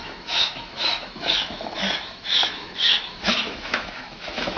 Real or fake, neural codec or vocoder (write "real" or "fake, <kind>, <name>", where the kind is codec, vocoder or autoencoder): fake, autoencoder, DAC-VAE